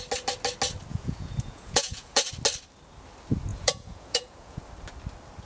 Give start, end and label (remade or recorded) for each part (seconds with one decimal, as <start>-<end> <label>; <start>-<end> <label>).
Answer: 0.0-0.9 recorded; 0.9-2.3 remade; 2.3-3.5 recorded; 3.5-4.6 remade; 4.6-5.5 recorded